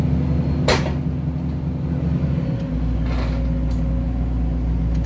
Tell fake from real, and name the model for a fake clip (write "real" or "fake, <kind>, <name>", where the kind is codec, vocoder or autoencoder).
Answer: real